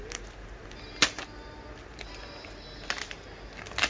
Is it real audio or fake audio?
real